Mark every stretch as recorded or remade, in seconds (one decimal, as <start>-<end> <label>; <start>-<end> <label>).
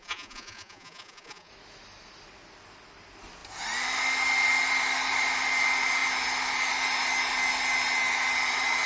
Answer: 0.0-1.5 remade; 1.5-8.9 recorded